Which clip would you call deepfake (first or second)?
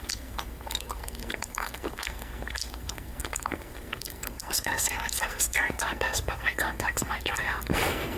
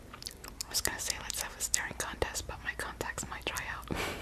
first